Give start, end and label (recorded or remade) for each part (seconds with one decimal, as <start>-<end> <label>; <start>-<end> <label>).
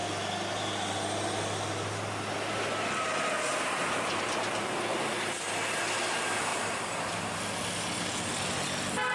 0.0-6.5 recorded; 6.5-7.8 remade; 7.8-9.1 recorded